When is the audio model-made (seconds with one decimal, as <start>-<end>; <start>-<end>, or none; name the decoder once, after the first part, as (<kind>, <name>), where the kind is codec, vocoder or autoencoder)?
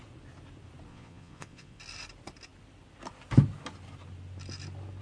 0.9-1.8 (vocoder, Vocos)